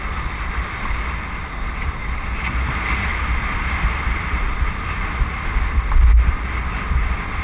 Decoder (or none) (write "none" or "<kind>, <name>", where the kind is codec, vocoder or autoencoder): none